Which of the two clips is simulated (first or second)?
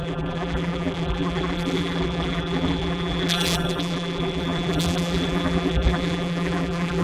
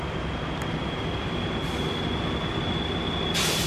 first